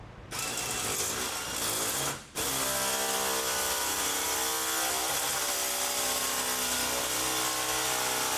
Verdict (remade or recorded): recorded